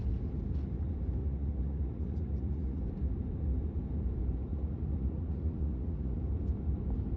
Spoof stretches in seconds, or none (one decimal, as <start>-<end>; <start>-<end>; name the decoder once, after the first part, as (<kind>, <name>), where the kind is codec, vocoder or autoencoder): 1.2-2.8 (vocoder, Vocos); 4.5-6.2